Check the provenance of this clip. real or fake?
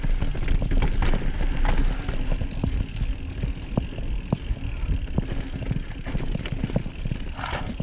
real